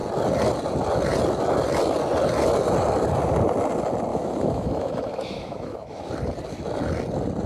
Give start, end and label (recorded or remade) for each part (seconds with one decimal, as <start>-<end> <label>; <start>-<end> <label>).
0.0-4.1 recorded; 4.1-6.1 remade; 6.1-7.5 recorded

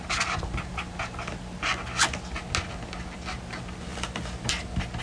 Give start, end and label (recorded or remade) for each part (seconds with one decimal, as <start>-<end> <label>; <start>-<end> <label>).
0.0-5.0 recorded

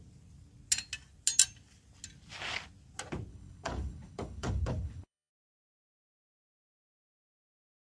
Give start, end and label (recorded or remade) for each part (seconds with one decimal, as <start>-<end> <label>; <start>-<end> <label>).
0.0-3.3 recorded; 3.3-5.3 remade; 5.3-7.9 recorded

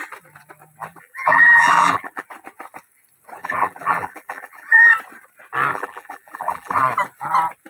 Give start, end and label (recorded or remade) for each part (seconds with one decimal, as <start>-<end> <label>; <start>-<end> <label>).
0.0-0.9 recorded; 0.9-2.2 remade; 2.2-3.4 recorded; 3.4-4.9 remade; 4.9-5.7 recorded; 5.7-6.8 remade; 6.8-7.7 recorded

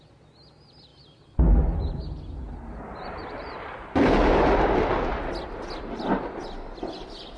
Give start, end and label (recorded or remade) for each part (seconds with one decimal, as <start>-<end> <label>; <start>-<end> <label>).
0.0-7.4 recorded